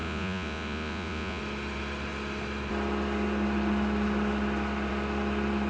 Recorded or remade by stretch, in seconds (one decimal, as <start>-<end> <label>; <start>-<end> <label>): 0.0-1.4 remade; 1.4-5.7 recorded